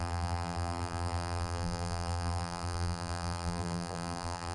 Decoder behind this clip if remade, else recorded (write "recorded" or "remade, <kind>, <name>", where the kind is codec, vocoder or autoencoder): remade, vocoder, BigVGAN v2